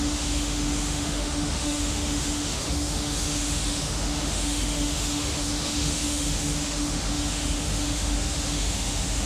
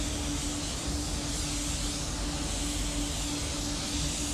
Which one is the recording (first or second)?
second